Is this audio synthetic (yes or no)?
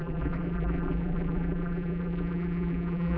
yes